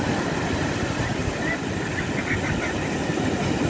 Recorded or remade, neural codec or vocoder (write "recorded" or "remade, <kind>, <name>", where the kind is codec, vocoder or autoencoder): recorded